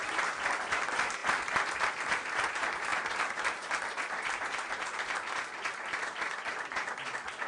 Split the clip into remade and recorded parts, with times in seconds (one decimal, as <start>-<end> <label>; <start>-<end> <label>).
0.0-7.5 recorded